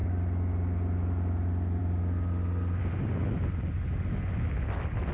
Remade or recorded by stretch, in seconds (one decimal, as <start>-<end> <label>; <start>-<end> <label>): 0.0-5.1 recorded